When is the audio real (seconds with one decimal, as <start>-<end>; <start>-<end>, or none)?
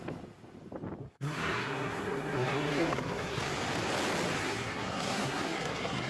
0.0-1.0; 3.4-4.4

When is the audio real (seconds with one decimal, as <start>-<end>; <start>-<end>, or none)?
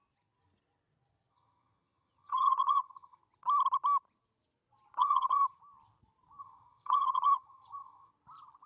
0.0-1.3; 3.2-5.0; 5.6-6.4; 8.1-8.7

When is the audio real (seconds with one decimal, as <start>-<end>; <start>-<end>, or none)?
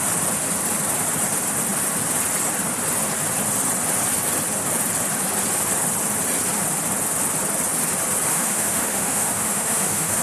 0.0-8.3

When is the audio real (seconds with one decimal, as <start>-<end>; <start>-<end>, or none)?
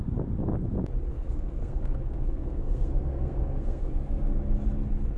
0.0-1.1; 4.2-5.2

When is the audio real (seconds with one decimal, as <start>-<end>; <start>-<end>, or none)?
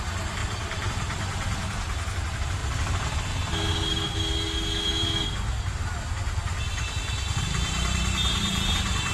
0.4-0.9; 2.6-7.4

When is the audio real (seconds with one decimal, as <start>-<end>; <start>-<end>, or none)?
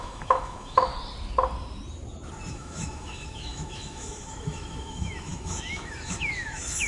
0.9-2.5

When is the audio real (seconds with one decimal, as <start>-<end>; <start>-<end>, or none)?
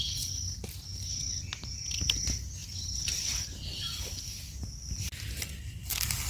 0.0-2.6; 4.0-6.3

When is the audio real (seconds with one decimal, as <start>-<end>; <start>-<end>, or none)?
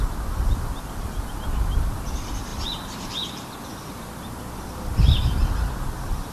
0.0-2.5